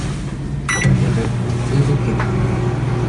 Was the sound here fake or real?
real